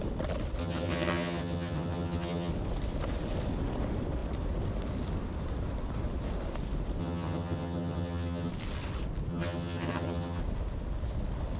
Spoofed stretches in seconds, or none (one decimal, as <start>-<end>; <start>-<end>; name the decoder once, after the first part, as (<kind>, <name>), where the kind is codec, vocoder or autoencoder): 0.6-2.5 (vocoder, HiFi-GAN); 7.0-8.5; 9.3-10.4